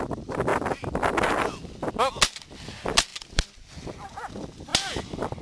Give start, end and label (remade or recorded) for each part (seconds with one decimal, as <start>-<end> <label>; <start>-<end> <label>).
0.0-3.1 recorded; 3.1-3.7 remade; 3.7-5.4 recorded